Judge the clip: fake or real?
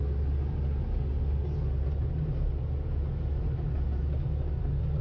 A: real